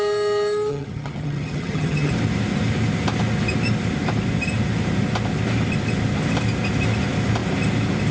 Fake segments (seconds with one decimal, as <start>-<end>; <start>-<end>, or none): 0.7-2.1